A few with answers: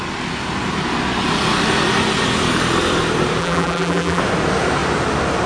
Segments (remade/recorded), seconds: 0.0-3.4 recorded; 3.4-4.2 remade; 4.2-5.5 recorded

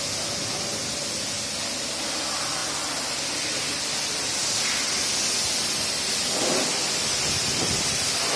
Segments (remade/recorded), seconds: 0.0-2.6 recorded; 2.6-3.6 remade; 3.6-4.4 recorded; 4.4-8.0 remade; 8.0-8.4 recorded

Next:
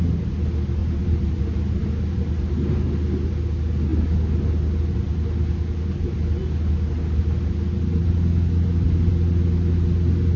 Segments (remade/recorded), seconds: 0.0-0.8 recorded; 0.8-1.4 remade; 1.4-10.4 recorded

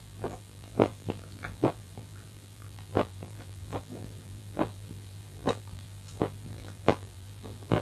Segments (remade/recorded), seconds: 0.0-7.8 remade